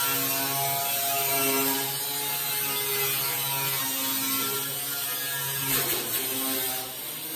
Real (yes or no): yes